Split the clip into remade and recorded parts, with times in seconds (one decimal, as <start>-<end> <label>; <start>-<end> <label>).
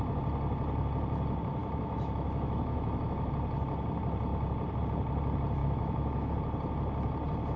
0.0-1.6 recorded; 1.6-3.3 remade; 3.3-5.6 recorded; 5.6-6.3 remade; 6.3-7.6 recorded